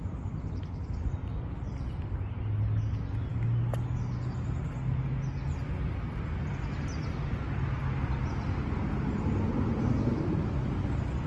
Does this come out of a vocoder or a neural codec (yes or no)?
no